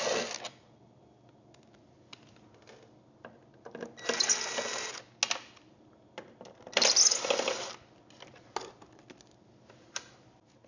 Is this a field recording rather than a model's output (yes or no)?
yes